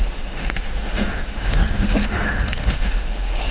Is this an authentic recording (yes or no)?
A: no